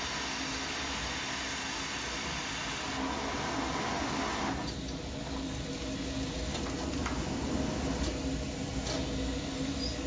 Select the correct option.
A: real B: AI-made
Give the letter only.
A